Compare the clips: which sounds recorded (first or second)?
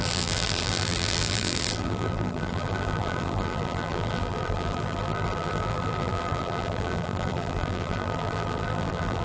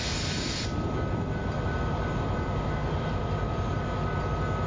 second